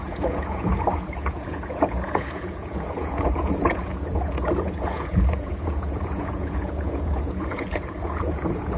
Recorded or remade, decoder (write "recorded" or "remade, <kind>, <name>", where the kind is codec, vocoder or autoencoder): remade, vocoder, Vocos